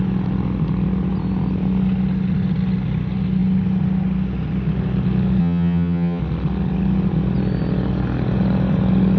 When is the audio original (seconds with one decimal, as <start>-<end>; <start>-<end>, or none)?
0.0-5.4; 6.2-9.2